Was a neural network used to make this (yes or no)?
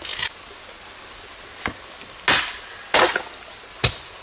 no